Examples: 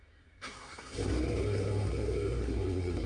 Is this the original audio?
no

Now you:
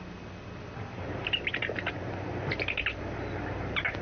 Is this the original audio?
yes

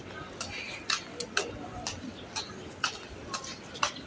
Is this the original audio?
yes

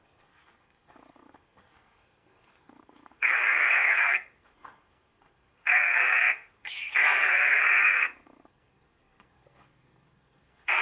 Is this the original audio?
no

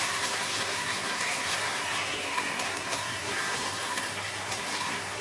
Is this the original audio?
no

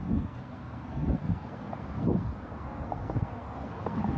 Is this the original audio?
no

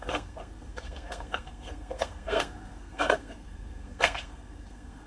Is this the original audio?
no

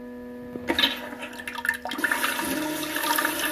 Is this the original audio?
yes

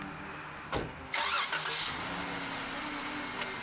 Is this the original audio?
yes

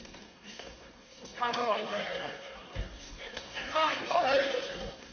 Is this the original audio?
no